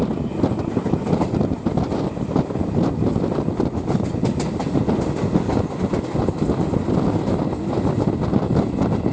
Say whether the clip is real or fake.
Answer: real